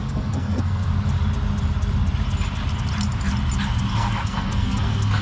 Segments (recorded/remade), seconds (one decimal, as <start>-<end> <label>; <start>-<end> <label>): 0.0-0.9 remade; 0.9-3.9 recorded; 3.9-5.2 remade